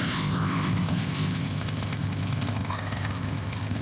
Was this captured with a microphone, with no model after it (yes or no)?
no